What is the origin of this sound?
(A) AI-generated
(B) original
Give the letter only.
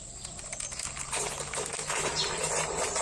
B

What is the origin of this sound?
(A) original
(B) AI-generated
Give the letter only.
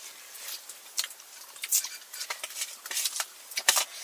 B